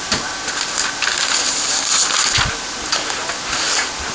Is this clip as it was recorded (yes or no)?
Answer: yes